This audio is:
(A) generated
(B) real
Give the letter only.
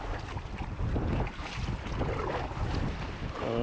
B